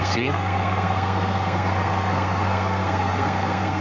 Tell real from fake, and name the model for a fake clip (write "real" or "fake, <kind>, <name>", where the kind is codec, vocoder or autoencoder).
fake, codec, SNAC